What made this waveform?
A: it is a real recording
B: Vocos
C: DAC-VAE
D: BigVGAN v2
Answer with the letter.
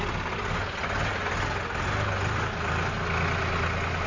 A